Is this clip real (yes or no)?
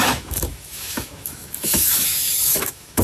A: no